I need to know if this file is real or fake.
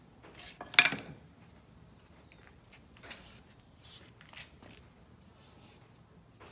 real